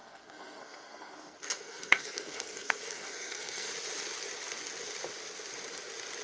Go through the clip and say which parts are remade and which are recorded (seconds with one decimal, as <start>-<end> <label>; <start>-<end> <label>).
0.0-3.7 remade; 3.7-6.2 recorded